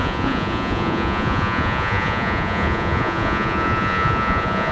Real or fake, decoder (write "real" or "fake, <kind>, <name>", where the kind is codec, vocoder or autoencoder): fake, vocoder, Vocos